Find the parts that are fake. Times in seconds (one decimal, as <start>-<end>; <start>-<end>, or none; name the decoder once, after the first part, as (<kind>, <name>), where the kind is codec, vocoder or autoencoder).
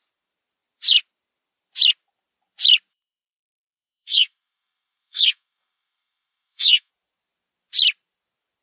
2.9-6.9 (codec, SNAC)